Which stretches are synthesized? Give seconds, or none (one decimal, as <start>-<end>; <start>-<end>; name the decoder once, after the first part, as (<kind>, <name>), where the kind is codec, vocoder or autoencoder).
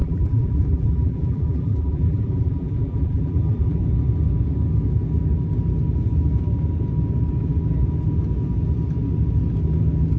0.0-3.8 (vocoder, BigVGAN v2)